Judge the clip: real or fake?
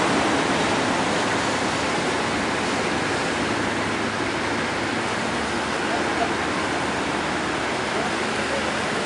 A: real